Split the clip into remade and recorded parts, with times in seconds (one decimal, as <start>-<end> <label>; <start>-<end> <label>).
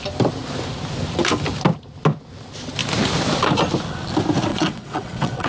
0.0-4.5 recorded; 4.5-5.5 remade